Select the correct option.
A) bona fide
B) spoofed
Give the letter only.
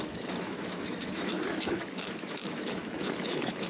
B